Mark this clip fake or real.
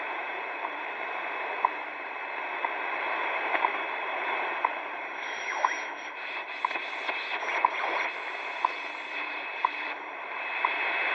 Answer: fake